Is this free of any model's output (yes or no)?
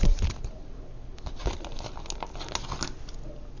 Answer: yes